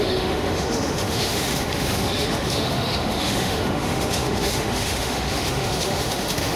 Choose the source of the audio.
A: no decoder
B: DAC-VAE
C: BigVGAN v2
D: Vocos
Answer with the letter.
B